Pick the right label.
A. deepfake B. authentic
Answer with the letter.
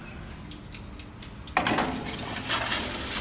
B